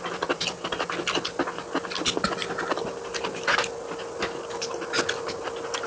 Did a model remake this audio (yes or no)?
no